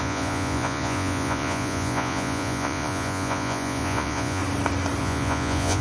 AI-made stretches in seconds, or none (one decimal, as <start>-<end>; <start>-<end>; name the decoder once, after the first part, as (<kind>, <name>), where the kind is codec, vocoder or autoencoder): 0.0-4.4 (vocoder, Vocos); 5.0-5.8